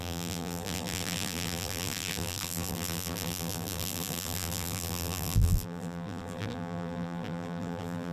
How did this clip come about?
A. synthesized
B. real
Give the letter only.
A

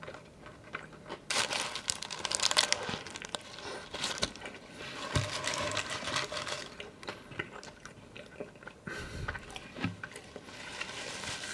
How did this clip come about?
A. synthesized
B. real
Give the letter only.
A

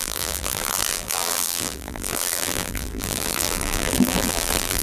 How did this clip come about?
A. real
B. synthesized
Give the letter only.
B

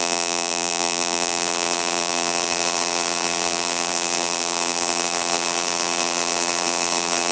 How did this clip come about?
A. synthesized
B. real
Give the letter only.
A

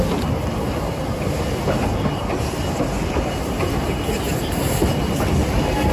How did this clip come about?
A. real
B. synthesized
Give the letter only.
A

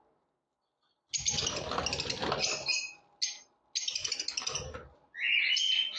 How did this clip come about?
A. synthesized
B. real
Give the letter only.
B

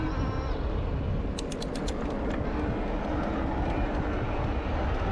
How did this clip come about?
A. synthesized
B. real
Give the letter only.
B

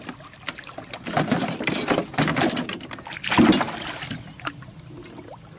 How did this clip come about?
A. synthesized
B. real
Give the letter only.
B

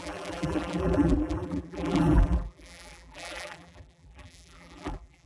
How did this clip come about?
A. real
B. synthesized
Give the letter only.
B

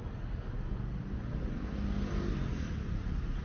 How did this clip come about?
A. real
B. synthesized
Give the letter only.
A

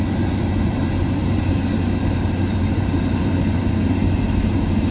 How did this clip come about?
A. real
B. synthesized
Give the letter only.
B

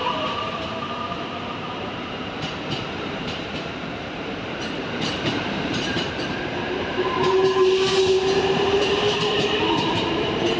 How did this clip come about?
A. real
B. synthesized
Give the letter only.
B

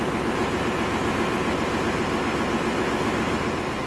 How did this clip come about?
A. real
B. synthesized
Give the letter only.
A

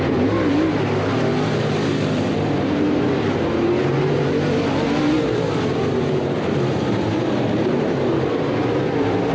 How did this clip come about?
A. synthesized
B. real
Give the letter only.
A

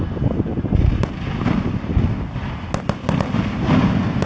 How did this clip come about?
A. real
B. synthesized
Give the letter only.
A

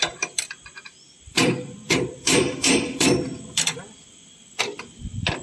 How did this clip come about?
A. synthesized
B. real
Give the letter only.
A